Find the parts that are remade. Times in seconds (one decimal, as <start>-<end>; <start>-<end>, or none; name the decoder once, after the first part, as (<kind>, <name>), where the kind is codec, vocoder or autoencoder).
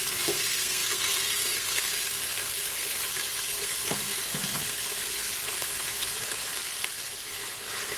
0.0-8.0 (codec, SNAC)